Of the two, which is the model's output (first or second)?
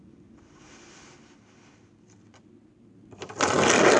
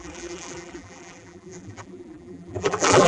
second